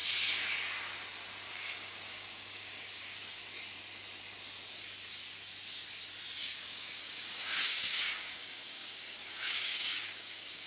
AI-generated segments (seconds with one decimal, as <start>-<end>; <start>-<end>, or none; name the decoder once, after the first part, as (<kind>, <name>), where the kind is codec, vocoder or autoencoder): 1.5-3.4 (codec, DAC); 6.4-10.7